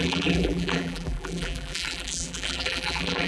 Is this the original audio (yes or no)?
no